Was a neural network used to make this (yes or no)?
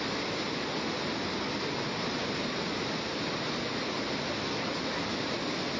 no